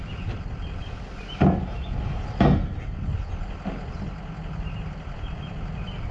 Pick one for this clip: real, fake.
real